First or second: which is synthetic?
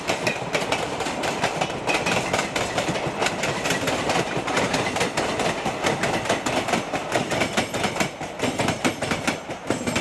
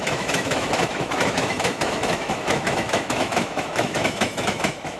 second